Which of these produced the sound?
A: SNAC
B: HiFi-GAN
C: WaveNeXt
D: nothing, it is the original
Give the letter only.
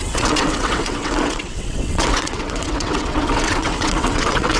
C